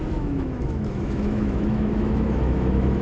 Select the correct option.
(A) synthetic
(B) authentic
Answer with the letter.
A